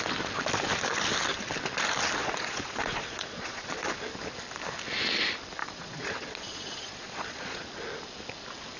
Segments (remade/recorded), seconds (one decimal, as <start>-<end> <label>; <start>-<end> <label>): 0.0-2.2 recorded; 2.2-3.9 remade; 3.9-5.6 recorded; 5.6-7.7 remade; 7.7-8.8 recorded